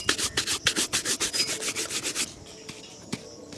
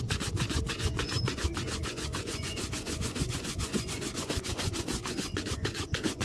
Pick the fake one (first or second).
second